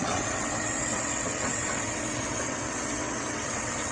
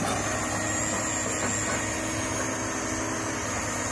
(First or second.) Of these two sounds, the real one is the second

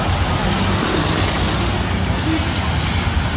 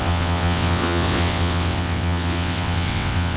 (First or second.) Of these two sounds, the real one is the first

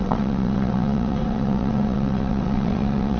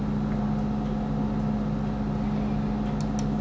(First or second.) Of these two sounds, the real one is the second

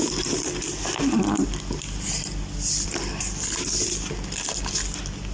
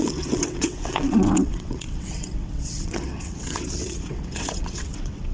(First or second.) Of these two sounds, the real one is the first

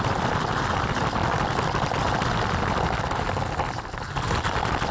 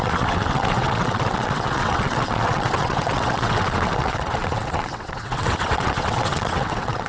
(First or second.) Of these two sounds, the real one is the first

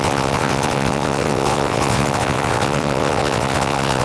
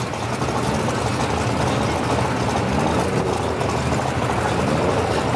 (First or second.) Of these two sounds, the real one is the second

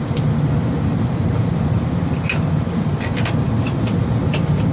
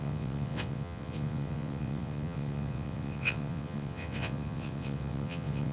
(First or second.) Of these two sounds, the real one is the first